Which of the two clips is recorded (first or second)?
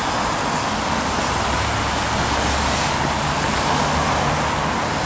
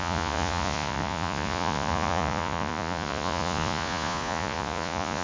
first